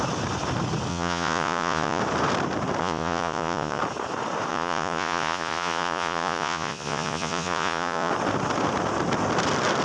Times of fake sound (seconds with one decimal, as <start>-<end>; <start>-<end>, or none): 0.9-2.0; 2.8-3.8; 4.5-8.1

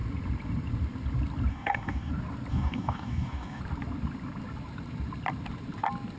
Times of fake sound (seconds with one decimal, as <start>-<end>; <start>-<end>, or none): 1.5-2.1; 2.5-3.6

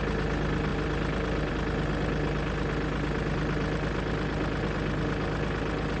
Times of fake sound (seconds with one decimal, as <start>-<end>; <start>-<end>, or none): none